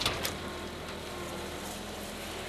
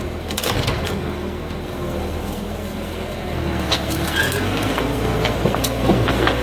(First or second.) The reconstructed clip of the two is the second